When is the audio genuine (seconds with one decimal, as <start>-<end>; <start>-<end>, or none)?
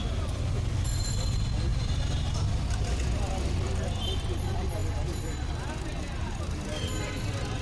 0.0-7.6